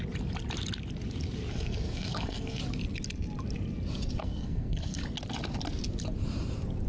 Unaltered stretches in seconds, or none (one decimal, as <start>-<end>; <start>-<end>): 0.0-1.5; 2.6-4.2; 5.0-6.9